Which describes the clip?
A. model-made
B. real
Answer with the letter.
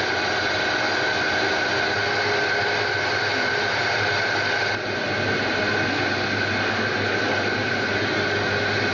B